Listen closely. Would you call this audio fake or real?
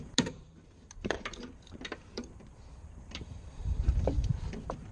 fake